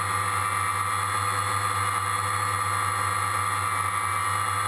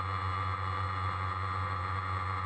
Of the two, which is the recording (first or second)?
first